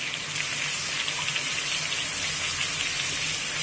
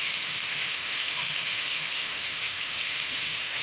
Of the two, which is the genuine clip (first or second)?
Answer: first